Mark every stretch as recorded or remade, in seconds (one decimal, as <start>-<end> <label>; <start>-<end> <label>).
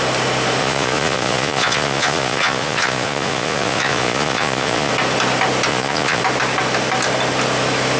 0.0-0.6 recorded; 0.6-4.9 remade; 4.9-5.7 recorded; 5.7-6.2 remade; 6.2-8.0 recorded